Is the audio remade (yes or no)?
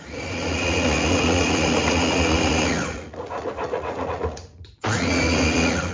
yes